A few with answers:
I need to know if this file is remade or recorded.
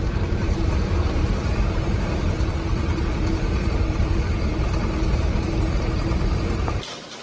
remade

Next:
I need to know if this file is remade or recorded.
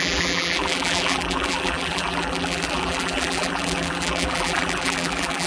remade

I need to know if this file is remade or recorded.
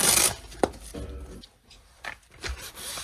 remade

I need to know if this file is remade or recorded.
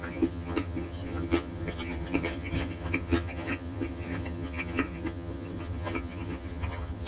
remade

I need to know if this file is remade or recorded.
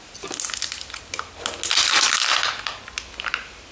recorded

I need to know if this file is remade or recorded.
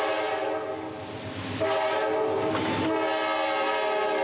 recorded